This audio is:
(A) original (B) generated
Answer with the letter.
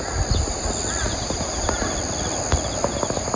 A